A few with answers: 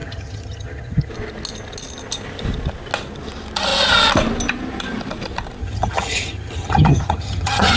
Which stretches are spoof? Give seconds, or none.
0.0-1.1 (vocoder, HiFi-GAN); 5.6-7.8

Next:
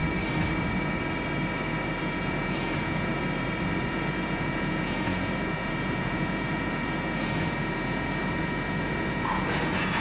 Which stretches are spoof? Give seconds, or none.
2.0-3.1 (vocoder, Vocos); 3.9-10.0

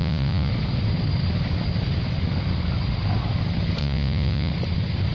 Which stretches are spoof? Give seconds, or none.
0.0-0.5 (vocoder, Vocos); 3.8-4.5

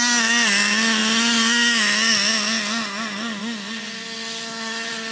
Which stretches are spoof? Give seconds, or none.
none

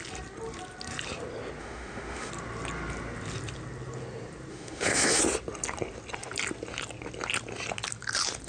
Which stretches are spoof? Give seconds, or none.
1.6-2.3 (autoencoder, DAC-VAE); 4.5-5.2